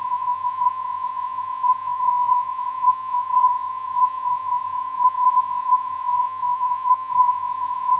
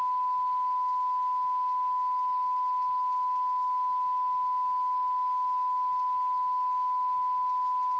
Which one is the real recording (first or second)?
second